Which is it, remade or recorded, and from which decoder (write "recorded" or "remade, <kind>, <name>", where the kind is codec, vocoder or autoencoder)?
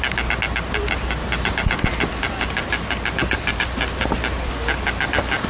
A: recorded